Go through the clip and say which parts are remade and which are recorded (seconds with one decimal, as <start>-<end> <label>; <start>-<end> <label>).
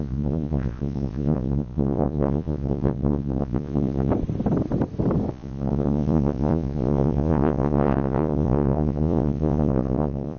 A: 0.0-4.1 remade; 4.1-5.3 recorded; 5.3-10.4 remade